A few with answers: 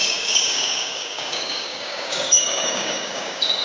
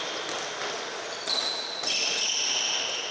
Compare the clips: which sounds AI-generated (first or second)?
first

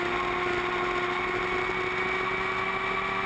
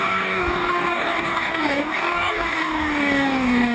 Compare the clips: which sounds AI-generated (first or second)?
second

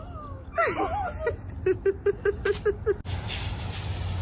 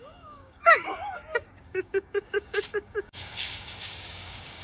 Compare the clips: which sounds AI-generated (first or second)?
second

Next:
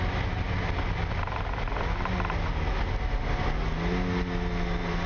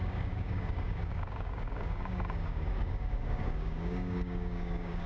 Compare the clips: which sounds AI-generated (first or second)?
second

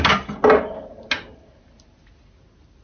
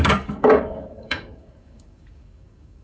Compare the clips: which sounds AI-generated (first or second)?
second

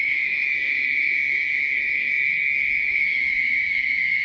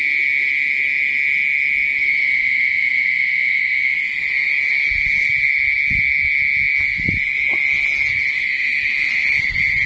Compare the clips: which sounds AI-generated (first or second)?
first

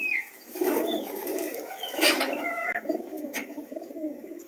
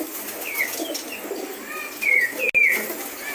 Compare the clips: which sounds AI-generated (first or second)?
first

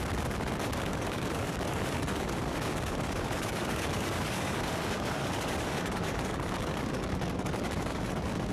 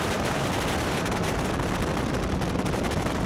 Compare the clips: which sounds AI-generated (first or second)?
first